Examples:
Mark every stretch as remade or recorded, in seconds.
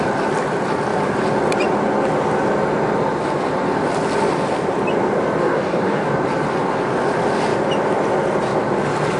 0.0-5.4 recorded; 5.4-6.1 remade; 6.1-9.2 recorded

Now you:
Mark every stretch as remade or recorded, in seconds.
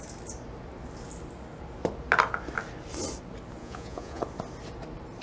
0.0-3.6 recorded; 3.6-4.2 remade; 4.2-5.2 recorded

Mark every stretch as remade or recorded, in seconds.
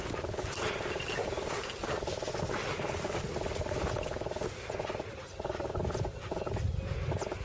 0.0-7.4 recorded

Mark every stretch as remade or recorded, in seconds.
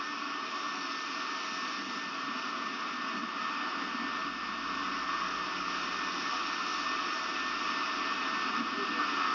0.0-9.3 recorded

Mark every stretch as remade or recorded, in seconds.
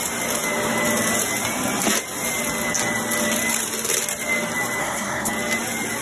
0.0-4.8 recorded; 4.8-5.3 remade; 5.3-6.0 recorded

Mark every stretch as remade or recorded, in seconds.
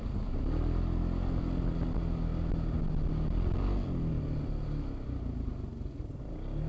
0.0-6.7 recorded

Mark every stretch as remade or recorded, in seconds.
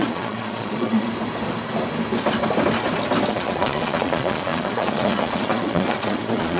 0.0-1.1 remade; 1.1-3.3 recorded; 3.3-6.6 remade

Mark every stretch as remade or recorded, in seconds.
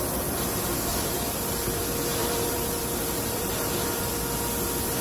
0.0-0.9 recorded; 0.9-1.8 remade; 1.8-2.2 recorded; 2.2-3.5 remade; 3.5-5.0 recorded